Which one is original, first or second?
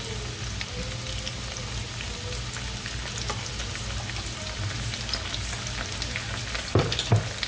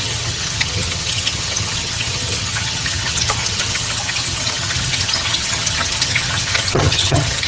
first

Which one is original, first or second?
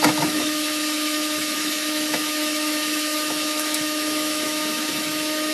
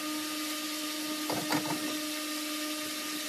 second